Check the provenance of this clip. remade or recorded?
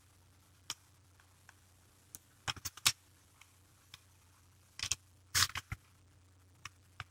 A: recorded